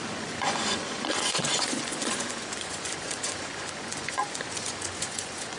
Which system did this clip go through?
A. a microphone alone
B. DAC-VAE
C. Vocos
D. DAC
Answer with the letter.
C